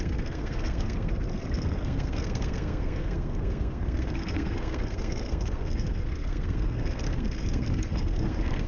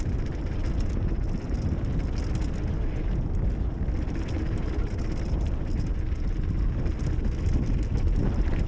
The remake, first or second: first